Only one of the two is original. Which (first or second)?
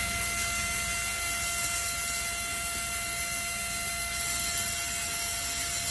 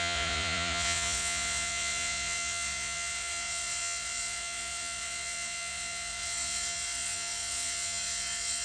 first